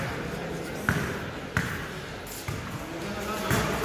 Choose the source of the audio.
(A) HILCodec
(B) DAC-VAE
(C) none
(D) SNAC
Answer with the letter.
C